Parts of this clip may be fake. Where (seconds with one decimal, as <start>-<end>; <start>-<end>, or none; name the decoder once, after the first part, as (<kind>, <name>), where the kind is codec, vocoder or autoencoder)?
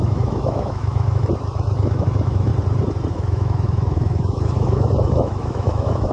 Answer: 0.0-2.5 (autoencoder, DAC-VAE); 3.1-6.1